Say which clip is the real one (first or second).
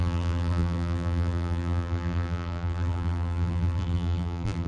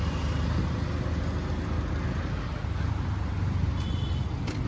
second